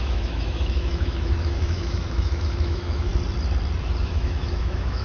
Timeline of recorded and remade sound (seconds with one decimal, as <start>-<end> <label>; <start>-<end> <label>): 0.0-3.1 remade; 3.1-4.0 recorded; 4.0-5.0 remade